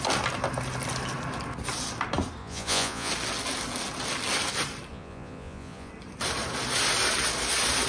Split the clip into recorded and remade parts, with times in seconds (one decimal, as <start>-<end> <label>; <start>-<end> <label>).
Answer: 0.0-2.4 recorded; 2.4-3.1 remade; 3.1-4.9 recorded; 4.9-5.9 remade; 5.9-7.9 recorded